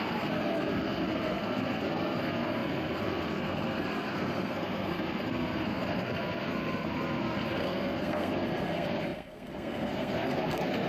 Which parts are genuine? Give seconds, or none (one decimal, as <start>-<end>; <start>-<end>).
none